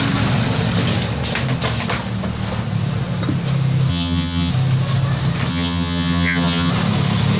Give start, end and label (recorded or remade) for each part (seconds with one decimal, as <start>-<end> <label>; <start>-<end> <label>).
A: 0.0-3.9 recorded; 3.9-4.5 remade; 4.5-5.5 recorded; 5.5-6.7 remade; 6.7-7.4 recorded